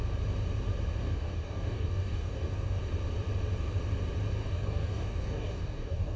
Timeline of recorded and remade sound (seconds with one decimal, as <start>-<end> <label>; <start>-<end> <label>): 0.0-1.0 recorded; 1.0-2.8 remade; 2.8-4.4 recorded; 4.4-6.2 remade